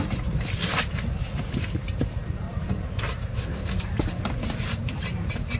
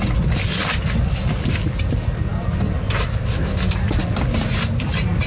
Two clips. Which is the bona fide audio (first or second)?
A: second